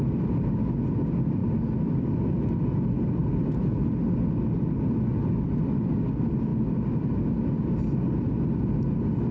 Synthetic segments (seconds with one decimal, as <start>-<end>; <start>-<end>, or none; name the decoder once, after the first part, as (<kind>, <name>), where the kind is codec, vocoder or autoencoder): 3.2-4.0 (vocoder, BigVGAN v2)